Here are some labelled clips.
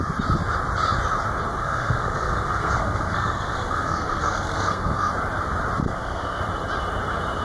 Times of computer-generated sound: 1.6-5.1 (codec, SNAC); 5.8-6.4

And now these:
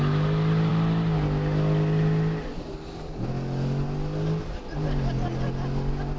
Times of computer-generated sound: none